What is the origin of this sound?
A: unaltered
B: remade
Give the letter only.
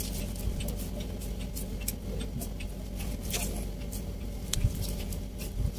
A